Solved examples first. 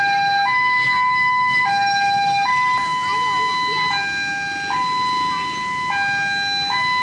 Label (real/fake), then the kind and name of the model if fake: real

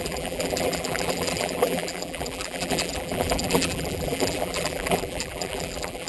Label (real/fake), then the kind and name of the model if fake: fake, vocoder, BigVGAN v2